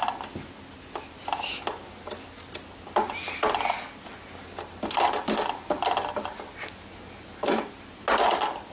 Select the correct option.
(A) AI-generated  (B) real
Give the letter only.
B